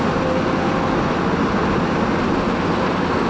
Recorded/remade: recorded